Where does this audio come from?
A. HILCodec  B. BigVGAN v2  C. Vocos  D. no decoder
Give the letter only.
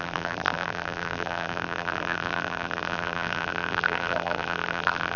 B